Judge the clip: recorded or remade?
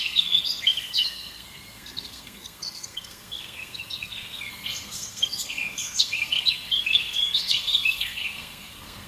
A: remade